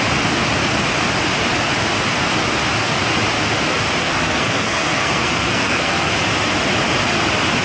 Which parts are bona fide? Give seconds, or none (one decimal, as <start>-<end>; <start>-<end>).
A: 0.0-4.0; 6.1-7.6